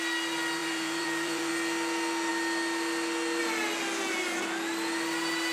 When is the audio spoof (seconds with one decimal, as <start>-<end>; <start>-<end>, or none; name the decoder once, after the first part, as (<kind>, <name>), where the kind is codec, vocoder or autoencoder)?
0.6-1.5 (vocoder, BigVGAN v2)